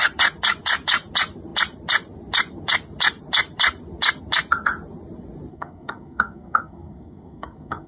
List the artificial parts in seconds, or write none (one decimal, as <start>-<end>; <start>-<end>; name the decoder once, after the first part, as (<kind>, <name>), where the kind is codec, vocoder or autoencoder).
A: 5.5-7.9 (codec, SNAC)